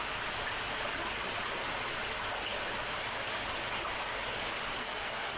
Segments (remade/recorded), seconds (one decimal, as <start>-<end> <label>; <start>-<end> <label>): 0.0-4.8 recorded; 4.8-5.4 remade